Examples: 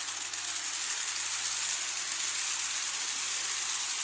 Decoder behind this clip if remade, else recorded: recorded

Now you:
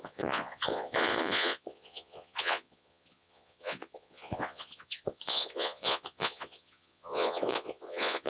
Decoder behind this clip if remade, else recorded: remade, vocoder, Vocos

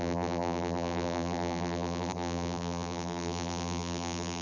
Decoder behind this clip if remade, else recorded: remade, vocoder, BigVGAN v2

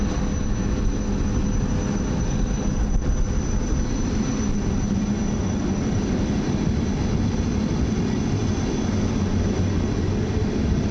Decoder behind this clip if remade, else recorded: recorded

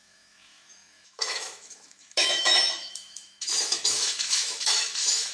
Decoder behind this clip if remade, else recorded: remade, autoencoder, DAC-VAE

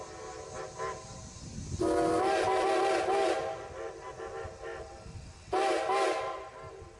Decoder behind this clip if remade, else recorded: recorded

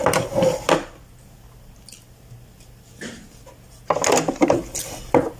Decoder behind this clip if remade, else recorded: recorded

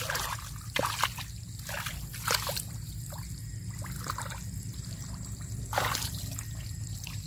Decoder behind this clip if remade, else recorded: recorded